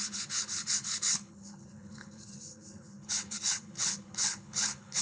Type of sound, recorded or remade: remade